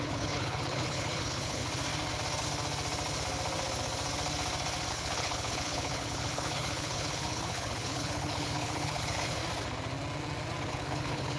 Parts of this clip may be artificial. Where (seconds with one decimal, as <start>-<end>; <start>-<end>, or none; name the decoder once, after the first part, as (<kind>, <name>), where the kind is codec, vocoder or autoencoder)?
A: 0.0-1.6 (codec, HILCodec); 4.9-9.4; 10.7-11.4